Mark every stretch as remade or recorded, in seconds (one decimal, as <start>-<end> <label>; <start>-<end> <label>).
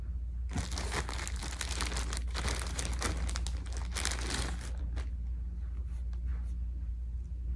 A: 0.0-7.6 recorded